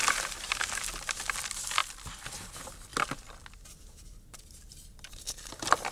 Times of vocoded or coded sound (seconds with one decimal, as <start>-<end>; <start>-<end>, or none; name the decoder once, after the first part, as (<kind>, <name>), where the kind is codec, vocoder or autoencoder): 0.0-0.8 (vocoder, BigVGAN v2)